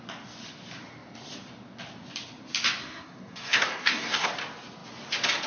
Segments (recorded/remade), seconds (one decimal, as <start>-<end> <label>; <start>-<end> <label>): 0.0-2.8 recorded; 2.8-4.3 remade; 4.3-5.5 recorded